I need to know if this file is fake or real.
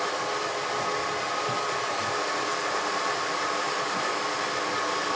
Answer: real